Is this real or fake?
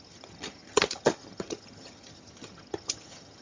fake